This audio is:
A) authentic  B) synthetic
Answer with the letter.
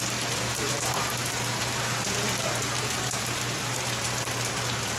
B